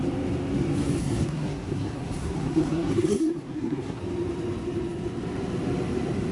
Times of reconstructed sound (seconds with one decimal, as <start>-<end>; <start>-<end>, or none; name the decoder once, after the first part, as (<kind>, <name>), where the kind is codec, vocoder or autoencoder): 1.0-4.0 (codec, SNAC)